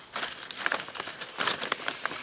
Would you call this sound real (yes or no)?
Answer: yes